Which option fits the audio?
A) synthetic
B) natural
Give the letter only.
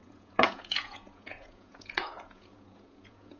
A